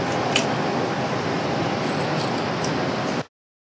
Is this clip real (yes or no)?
yes